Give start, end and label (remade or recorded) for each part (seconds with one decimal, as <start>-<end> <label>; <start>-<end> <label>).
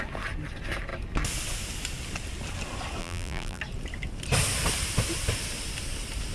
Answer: 0.0-3.0 recorded; 3.0-3.6 remade; 3.6-6.3 recorded